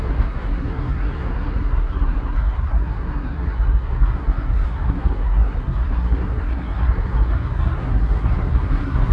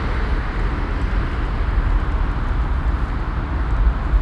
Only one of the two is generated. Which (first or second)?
first